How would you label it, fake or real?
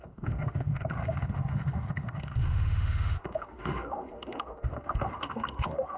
fake